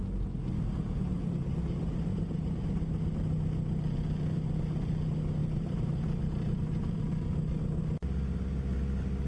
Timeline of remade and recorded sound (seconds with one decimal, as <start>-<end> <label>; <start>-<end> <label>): 0.0-5.4 recorded; 5.4-7.0 remade; 7.0-9.3 recorded